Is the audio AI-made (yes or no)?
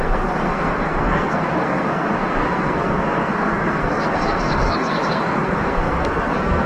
yes